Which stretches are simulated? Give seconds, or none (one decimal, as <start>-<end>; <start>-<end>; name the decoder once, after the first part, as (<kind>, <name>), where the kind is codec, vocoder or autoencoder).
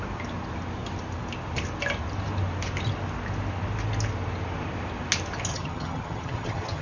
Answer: 5.5-6.8 (vocoder, HiFi-GAN)